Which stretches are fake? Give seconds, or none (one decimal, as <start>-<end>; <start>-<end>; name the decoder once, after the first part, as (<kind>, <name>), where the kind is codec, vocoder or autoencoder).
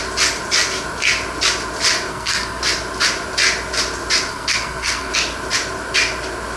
2.1-2.6 (codec, SNAC); 4.3-5.1